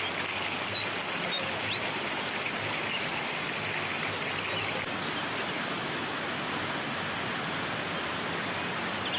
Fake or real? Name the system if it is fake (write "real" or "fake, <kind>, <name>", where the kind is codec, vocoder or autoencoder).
real